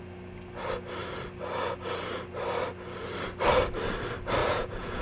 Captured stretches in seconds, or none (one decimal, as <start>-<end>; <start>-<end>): 0.0-4.4